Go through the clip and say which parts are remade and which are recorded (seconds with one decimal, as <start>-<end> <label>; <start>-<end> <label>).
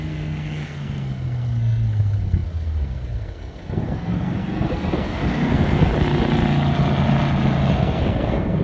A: 0.0-5.9 remade; 5.9-7.7 recorded; 7.7-8.6 remade